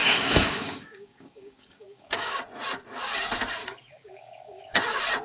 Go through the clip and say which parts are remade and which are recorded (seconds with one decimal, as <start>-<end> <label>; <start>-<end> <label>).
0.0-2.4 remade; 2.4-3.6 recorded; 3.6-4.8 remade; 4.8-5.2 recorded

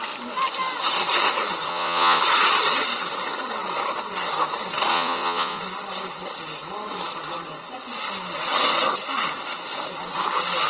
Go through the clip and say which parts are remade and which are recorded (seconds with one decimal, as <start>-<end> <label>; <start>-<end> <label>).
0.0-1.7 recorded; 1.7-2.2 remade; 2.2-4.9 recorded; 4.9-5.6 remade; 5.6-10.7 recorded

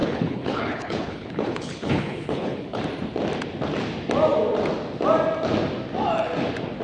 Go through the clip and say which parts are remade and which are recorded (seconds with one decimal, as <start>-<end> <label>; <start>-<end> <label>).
0.0-2.8 remade; 2.8-6.8 recorded